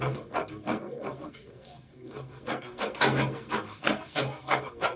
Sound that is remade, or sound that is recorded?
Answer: remade